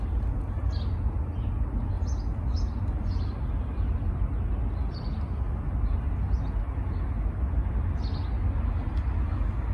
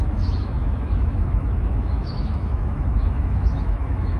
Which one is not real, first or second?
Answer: second